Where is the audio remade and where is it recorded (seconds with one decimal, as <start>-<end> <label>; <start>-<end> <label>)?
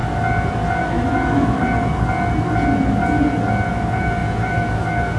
0.0-0.8 recorded; 0.8-1.9 remade; 1.9-3.7 recorded; 3.7-5.2 remade